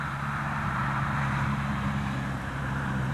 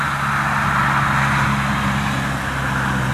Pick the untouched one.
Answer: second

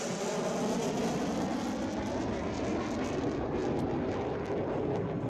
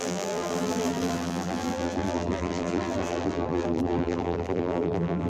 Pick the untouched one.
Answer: first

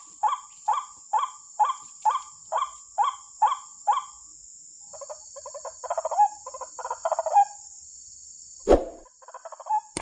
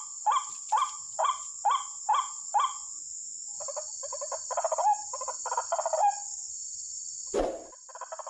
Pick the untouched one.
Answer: second